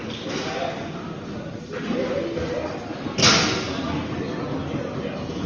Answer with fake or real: real